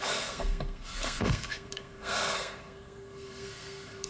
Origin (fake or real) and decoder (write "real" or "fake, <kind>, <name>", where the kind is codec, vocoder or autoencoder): fake, codec, SNAC